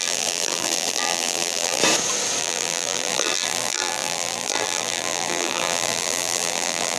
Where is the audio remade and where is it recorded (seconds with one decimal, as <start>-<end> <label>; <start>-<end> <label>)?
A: 0.0-1.8 remade; 1.8-2.4 recorded; 2.4-7.0 remade